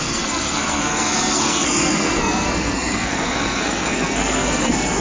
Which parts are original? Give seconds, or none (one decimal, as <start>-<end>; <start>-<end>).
none